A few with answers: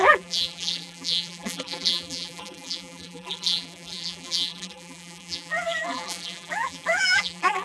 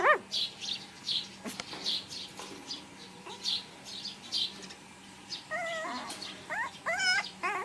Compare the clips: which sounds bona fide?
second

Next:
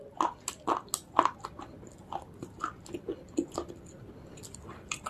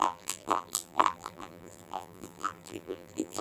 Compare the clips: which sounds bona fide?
first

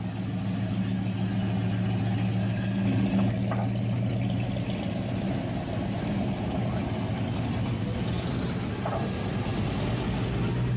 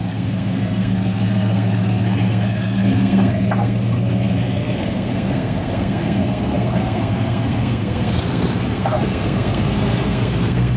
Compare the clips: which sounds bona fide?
first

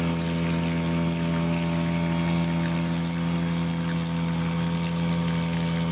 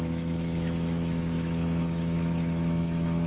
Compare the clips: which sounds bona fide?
first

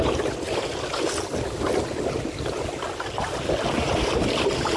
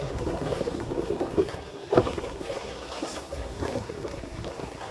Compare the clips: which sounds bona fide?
first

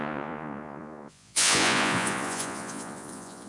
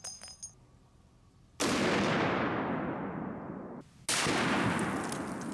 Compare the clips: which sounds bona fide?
second